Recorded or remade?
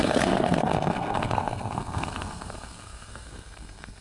remade